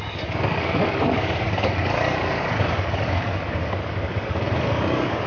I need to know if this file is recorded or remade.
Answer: remade